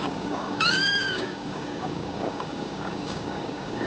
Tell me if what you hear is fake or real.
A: fake